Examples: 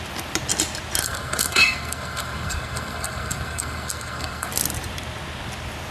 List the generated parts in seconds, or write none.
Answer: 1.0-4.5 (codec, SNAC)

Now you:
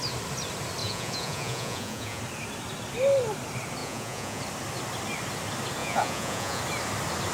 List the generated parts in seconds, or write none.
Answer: 0.8-2.2 (vocoder, Vocos); 3.8-4.4; 5.8-6.6

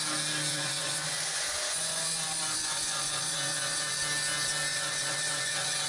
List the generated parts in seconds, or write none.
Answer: 0.5-4.0 (vocoder, Vocos); 4.7-5.9

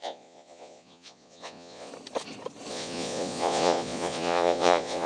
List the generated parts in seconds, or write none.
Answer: 0.0-1.9 (vocoder, Vocos); 2.7-5.1

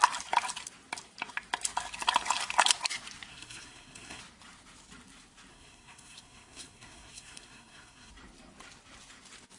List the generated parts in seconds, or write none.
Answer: 3.3-4.2 (codec, SNAC); 5.5-8.1

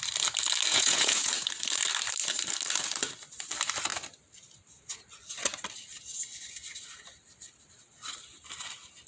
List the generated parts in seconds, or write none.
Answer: 0.7-1.3 (vocoder, Vocos)

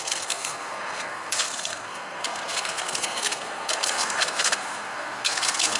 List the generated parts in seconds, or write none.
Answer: 0.0-5.8 (codec, SNAC)